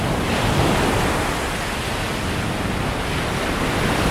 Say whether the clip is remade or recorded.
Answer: recorded